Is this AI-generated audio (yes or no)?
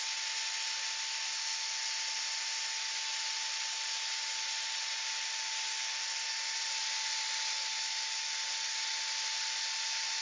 no